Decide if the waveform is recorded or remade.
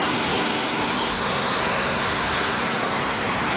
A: remade